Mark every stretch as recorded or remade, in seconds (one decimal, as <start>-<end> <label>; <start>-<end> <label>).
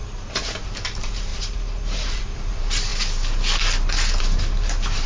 0.0-2.9 remade; 2.9-4.2 recorded; 4.2-5.1 remade